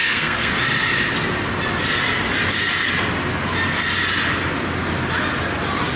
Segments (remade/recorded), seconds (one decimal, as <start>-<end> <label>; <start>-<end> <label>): 0.0-0.5 remade; 0.5-6.0 recorded